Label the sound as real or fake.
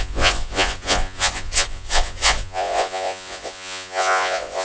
fake